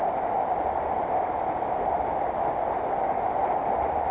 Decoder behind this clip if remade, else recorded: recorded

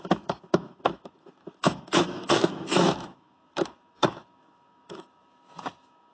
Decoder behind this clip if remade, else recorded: remade, autoencoder, DAC-VAE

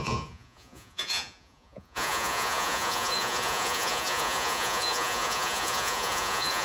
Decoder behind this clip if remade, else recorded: remade, vocoder, Vocos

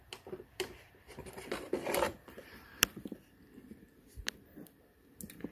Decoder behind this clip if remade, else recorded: remade, vocoder, BigVGAN v2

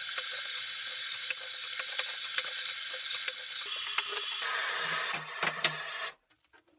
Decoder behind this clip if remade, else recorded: recorded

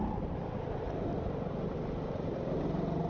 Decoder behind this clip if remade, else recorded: recorded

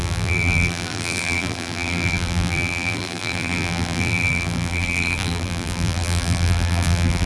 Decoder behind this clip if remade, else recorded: remade, vocoder, BigVGAN v2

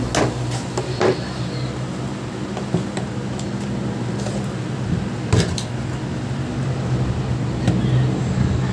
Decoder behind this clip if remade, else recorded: recorded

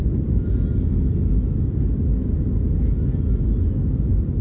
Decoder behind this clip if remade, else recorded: recorded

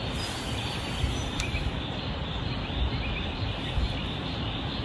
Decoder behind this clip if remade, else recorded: recorded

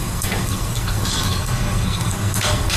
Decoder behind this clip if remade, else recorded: remade, codec, SNAC